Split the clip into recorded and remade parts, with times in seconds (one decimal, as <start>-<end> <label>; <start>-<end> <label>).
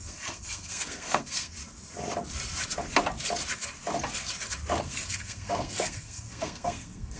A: 0.0-1.6 remade; 1.6-4.8 recorded; 4.8-7.2 remade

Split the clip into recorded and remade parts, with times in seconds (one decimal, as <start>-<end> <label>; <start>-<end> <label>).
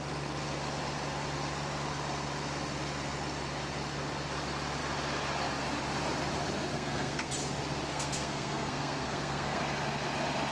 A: 0.0-6.7 recorded; 6.7-7.3 remade; 7.3-7.9 recorded; 7.9-9.6 remade; 9.6-10.5 recorded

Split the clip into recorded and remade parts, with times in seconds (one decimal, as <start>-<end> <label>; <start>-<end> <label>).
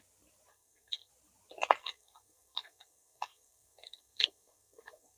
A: 0.0-0.5 recorded; 0.5-1.1 remade; 1.1-1.8 recorded; 1.8-5.2 remade